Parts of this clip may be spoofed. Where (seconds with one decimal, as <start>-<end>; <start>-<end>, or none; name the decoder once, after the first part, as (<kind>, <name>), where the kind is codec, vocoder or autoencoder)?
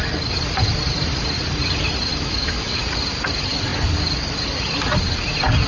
2.1-2.8 (autoencoder, DAC-VAE)